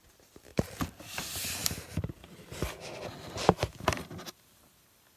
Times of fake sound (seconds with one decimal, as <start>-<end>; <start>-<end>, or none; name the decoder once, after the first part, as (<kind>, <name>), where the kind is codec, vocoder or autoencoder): none